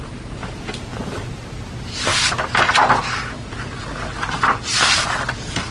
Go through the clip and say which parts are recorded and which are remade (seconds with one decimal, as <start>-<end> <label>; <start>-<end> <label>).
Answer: 0.0-0.4 recorded; 0.4-0.9 remade; 0.9-2.1 recorded; 2.1-5.7 remade